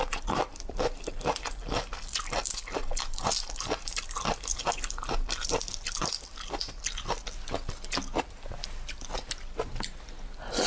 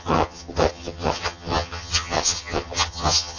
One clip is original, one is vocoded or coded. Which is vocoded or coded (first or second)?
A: second